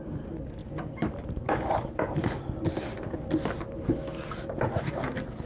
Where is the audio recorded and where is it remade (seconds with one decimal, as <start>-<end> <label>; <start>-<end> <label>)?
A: 0.0-5.5 remade